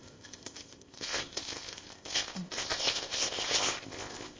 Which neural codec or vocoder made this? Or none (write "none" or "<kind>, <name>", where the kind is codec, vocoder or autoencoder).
codec, ZipCodec